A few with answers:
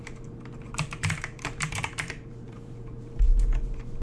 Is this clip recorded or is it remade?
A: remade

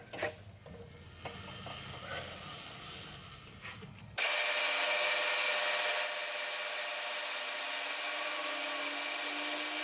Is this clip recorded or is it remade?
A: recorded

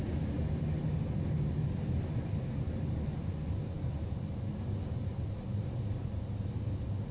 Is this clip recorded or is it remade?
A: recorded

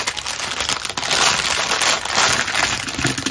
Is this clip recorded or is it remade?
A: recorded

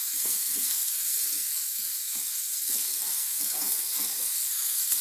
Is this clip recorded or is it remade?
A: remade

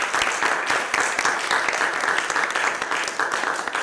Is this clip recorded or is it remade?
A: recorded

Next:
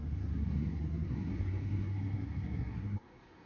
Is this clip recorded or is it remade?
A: remade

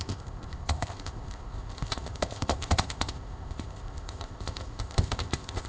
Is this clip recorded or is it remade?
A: remade